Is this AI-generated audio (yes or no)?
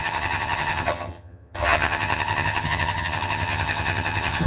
yes